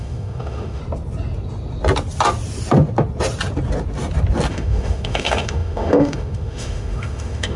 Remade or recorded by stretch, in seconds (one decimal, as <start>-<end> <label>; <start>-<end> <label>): 0.0-0.8 remade; 0.8-4.5 recorded; 4.5-7.6 remade